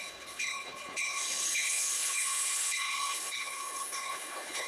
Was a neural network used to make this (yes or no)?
yes